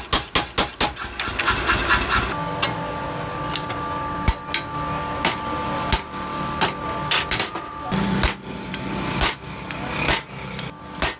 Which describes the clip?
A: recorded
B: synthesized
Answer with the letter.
A